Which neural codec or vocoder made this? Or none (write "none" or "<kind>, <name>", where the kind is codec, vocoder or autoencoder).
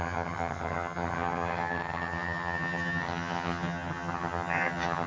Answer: vocoder, HiFi-GAN